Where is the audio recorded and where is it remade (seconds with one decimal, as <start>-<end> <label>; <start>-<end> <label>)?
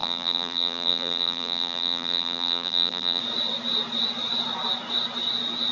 0.0-3.2 remade; 3.2-5.7 recorded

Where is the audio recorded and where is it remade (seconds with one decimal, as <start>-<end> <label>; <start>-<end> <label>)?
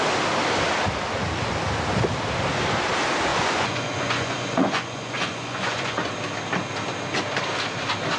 0.0-3.3 recorded; 3.3-6.1 remade; 6.1-8.2 recorded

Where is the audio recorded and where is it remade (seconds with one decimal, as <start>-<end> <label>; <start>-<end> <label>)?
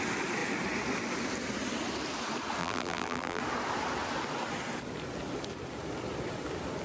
0.0-2.6 recorded; 2.6-3.4 remade; 3.4-6.8 recorded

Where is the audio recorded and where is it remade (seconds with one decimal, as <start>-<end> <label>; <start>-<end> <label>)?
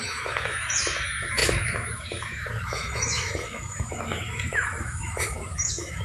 0.0-6.0 remade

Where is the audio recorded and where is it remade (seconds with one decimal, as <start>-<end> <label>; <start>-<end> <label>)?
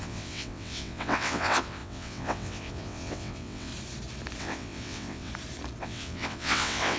0.0-3.7 remade; 3.7-4.4 recorded; 4.4-5.3 remade; 5.3-5.8 recorded; 5.8-7.0 remade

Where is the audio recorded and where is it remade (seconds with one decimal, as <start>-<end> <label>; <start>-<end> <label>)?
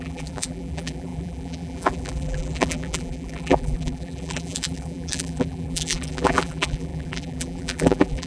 0.0-8.3 remade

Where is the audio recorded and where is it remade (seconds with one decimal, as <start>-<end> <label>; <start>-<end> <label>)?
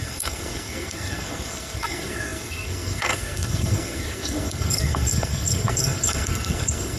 0.0-7.0 remade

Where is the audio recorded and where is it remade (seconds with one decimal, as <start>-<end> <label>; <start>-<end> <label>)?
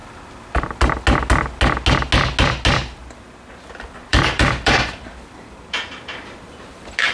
0.0-4.1 recorded; 4.1-7.1 remade